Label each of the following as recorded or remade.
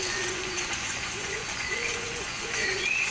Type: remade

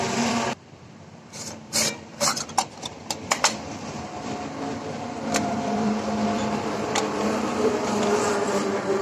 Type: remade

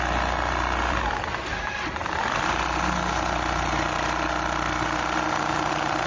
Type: recorded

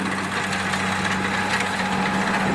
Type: recorded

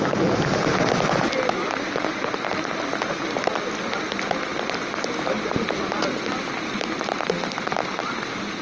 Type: recorded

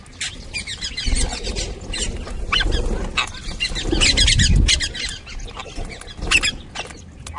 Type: recorded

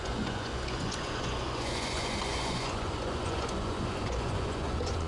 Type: remade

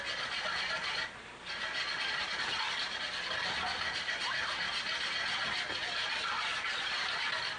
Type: recorded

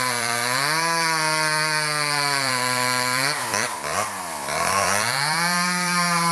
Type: remade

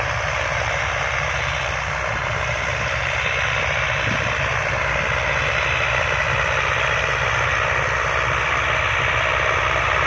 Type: remade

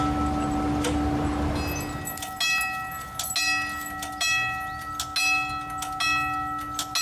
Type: recorded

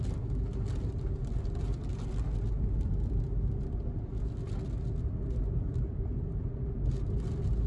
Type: recorded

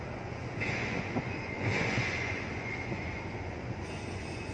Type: remade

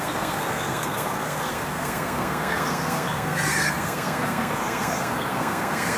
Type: remade